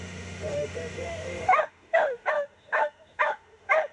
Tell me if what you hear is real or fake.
fake